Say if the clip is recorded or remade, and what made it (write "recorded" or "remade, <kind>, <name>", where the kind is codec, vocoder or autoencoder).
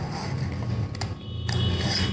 recorded